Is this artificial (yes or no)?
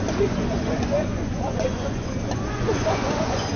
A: yes